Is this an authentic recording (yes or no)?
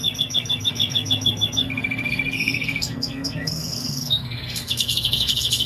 no